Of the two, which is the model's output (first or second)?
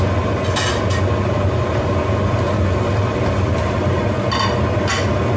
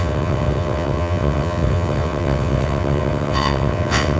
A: second